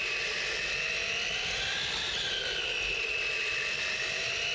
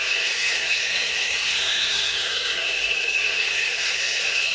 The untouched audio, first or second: first